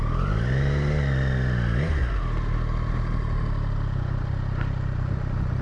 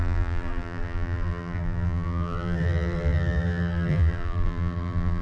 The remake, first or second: second